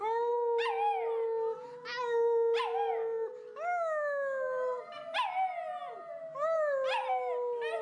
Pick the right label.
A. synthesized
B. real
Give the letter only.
B